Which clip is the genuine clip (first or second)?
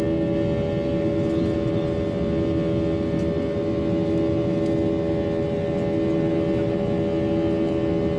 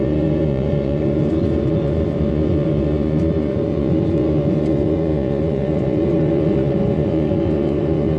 first